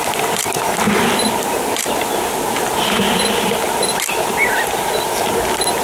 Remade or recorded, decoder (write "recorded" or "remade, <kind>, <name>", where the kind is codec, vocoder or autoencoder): recorded